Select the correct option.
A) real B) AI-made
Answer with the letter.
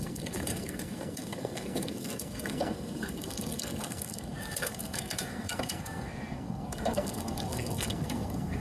B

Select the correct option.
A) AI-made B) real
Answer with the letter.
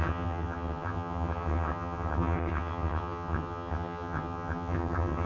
A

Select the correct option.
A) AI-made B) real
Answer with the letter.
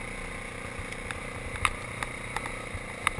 B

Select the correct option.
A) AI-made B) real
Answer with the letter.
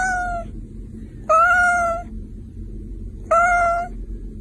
B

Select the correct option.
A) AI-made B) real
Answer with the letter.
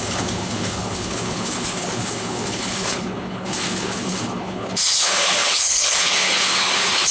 A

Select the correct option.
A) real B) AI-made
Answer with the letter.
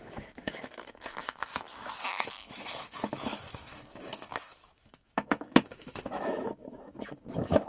B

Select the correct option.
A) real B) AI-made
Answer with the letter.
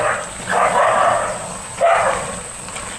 A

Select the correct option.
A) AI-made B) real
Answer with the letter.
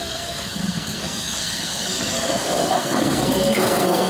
A